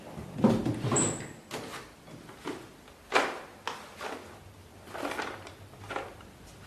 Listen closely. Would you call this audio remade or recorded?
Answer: recorded